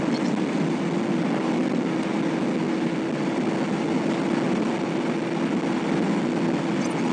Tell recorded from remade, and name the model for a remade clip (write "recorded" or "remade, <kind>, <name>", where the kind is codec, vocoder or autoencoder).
recorded